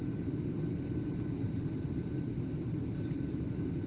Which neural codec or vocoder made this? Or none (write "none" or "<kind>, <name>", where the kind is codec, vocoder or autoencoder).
none